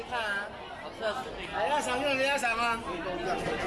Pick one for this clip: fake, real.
real